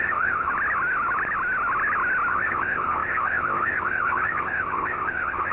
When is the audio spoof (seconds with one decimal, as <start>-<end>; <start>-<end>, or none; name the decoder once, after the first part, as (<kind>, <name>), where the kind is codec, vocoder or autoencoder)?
0.0-0.5 (codec, ZipCodec); 2.3-5.5